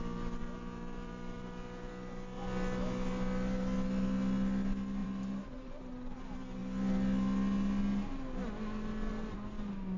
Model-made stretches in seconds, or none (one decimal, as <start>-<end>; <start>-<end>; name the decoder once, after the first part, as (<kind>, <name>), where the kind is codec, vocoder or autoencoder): 0.4-1.9 (vocoder, BigVGAN v2); 5.0-5.9